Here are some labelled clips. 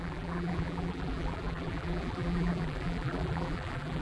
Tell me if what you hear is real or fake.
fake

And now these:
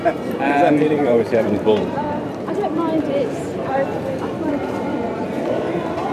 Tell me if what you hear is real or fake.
fake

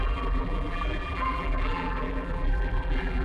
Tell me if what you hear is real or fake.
fake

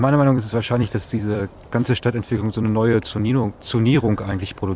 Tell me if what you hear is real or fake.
fake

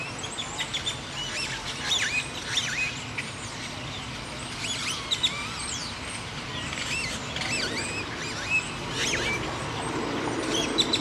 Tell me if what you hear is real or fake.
real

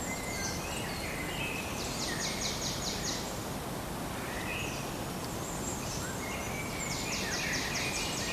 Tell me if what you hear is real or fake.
real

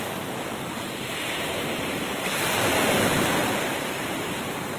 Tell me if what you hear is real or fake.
fake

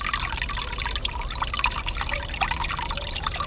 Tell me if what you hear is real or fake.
real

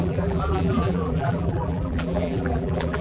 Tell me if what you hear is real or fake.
fake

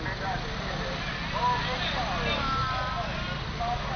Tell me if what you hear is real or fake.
real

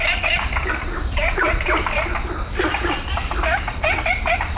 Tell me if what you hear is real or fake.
fake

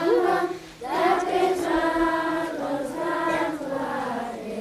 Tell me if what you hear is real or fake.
real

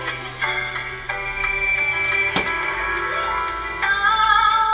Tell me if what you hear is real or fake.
real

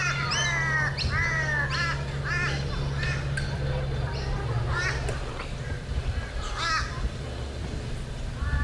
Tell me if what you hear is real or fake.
real